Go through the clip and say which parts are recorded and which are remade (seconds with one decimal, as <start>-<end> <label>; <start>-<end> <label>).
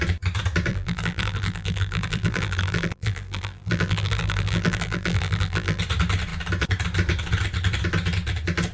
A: 0.0-0.7 recorded; 0.7-5.8 remade; 5.8-8.7 recorded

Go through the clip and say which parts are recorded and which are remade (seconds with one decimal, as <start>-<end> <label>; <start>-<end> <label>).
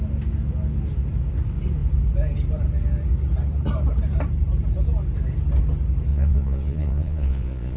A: 0.0-6.1 recorded; 6.1-7.8 remade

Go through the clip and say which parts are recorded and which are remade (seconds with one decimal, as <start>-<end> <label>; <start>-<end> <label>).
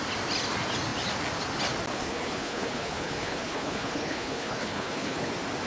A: 0.0-1.9 recorded; 1.9-5.3 remade; 5.3-5.7 recorded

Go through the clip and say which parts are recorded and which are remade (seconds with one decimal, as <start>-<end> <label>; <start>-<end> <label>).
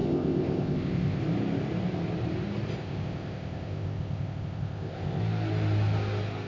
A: 0.0-1.2 remade; 1.2-2.8 recorded; 2.8-5.2 remade; 5.2-6.5 recorded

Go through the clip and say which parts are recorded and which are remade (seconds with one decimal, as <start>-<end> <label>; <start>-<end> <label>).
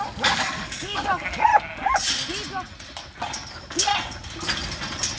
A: 0.0-1.5 remade; 1.5-3.5 recorded; 3.5-3.9 remade; 3.9-5.2 recorded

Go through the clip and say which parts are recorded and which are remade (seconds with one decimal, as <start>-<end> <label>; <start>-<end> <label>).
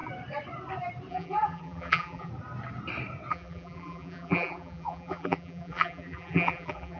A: 0.0-1.1 recorded; 1.1-2.3 remade; 2.3-3.3 recorded; 3.3-7.0 remade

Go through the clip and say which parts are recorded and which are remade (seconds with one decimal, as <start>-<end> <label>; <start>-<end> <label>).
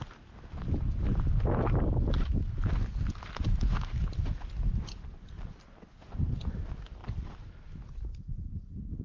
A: 0.0-9.0 recorded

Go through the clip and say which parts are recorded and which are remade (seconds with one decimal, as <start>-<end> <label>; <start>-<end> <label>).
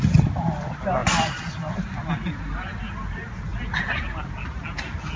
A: 0.0-5.2 recorded